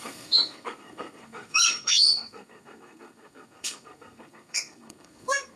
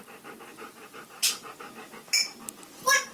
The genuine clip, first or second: second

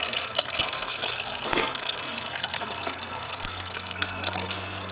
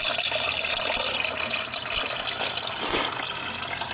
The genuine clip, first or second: second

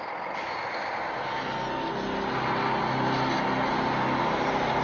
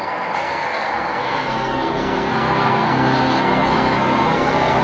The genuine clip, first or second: first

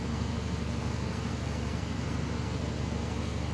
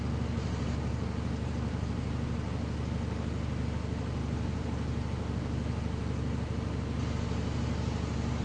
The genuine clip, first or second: second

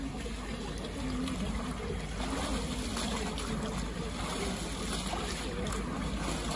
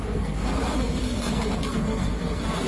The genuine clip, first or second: first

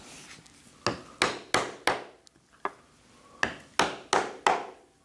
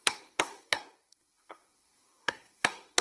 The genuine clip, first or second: first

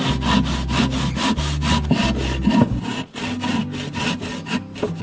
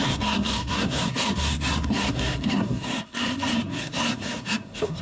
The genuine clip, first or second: first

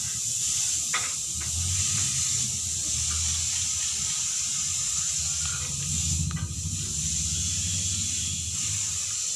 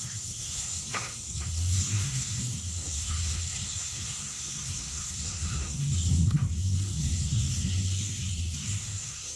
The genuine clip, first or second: first